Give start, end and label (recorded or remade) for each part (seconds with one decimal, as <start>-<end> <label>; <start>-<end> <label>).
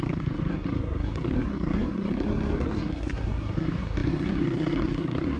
0.0-5.4 remade